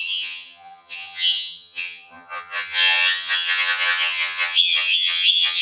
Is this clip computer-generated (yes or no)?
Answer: yes